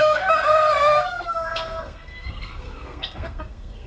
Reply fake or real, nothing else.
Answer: fake